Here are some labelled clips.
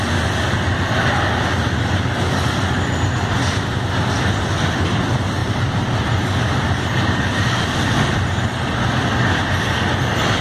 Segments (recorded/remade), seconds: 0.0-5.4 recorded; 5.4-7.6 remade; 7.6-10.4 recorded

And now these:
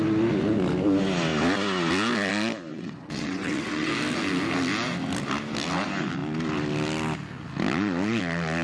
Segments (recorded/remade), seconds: 0.0-2.7 recorded; 2.7-3.9 remade; 3.9-8.6 recorded